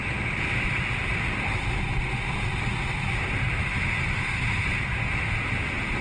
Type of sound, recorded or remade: recorded